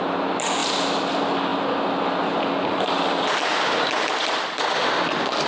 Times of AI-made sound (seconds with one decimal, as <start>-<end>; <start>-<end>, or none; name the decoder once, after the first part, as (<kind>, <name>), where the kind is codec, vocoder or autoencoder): none